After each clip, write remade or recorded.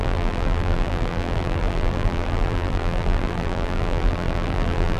remade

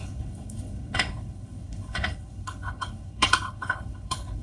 remade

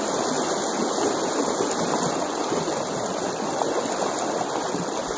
recorded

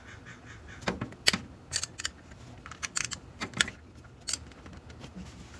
recorded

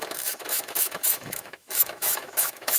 remade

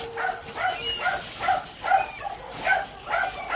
recorded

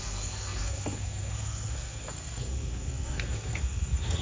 remade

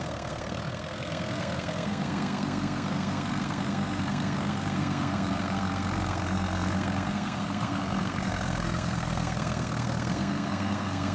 remade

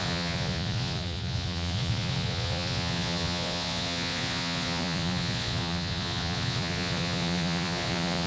remade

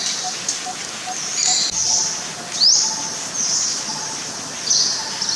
recorded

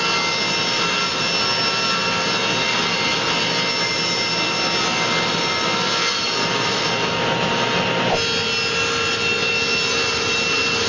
recorded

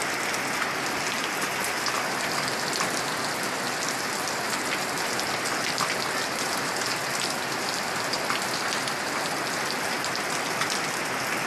recorded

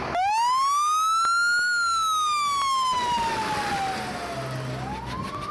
recorded